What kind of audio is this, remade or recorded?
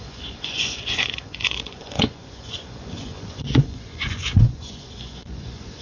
remade